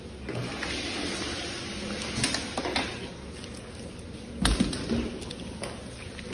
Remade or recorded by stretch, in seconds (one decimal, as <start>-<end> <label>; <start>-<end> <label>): 0.0-6.3 recorded